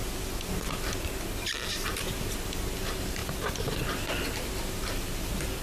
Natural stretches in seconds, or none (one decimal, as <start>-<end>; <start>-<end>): 0.0-5.6